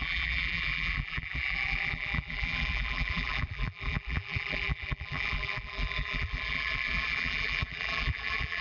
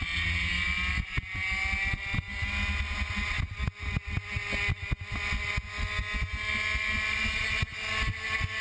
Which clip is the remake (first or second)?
first